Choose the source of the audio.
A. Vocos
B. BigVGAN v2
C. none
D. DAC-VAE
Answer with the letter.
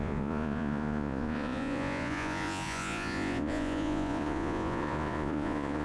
A